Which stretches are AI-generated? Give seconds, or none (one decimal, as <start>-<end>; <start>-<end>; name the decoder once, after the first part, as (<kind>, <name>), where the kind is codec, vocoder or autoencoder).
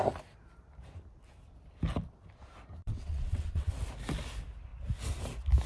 2.8-3.7 (vocoder, WaveNeXt)